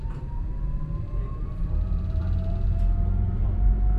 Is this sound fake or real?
fake